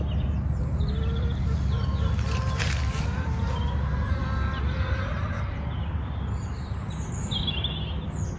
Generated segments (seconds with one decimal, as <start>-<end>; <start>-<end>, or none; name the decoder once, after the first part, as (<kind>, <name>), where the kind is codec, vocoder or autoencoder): none